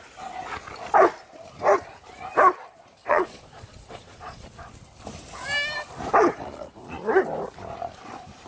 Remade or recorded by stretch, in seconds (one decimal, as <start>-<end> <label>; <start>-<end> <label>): 0.0-3.0 recorded; 3.0-4.5 remade; 4.5-6.2 recorded; 6.2-7.0 remade; 7.0-8.5 recorded